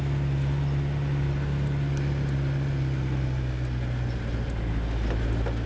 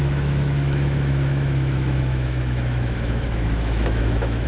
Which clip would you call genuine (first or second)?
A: first